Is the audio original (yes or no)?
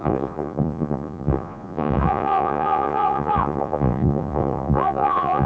no